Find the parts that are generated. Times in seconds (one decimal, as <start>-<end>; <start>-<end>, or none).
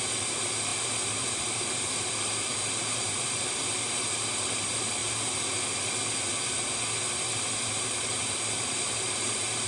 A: 0.0-5.0; 7.1-9.7